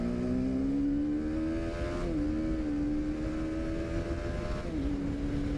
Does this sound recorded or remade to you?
recorded